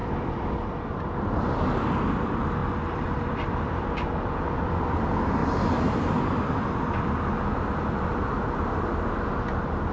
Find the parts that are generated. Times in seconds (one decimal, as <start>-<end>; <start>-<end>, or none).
2.6-4.9

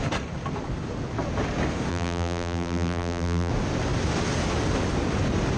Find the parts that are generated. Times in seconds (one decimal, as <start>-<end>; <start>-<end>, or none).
1.9-3.5

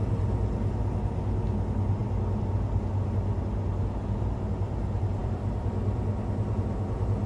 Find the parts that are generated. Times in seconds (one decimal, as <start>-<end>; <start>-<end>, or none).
5.2-5.7

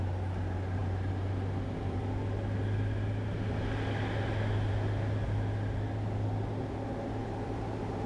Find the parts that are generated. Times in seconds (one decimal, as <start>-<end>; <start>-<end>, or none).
7.2-8.1

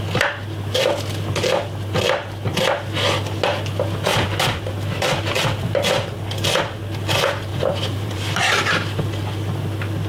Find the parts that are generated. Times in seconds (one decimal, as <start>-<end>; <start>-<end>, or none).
4.1-4.7; 7.5-8.4

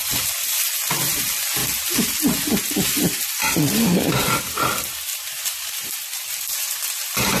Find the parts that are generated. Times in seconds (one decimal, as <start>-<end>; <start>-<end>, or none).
5.1-5.9

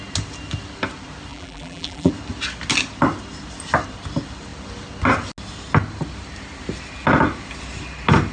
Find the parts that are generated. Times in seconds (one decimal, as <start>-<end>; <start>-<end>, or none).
1.3-2.1

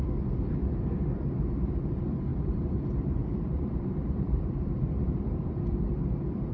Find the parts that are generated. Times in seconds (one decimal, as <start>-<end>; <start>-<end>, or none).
2.3-5.6